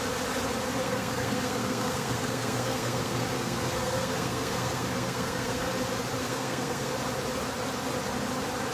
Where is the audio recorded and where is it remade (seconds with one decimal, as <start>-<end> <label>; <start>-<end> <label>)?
0.0-0.8 recorded; 0.8-5.7 remade; 5.7-6.2 recorded; 6.2-6.9 remade; 6.9-8.7 recorded